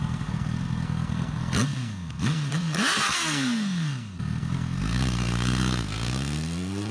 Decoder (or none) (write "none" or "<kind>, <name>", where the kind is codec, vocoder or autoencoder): codec, SNAC